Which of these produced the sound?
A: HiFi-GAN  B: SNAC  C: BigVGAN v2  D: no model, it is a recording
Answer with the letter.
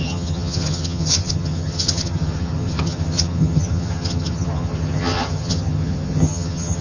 A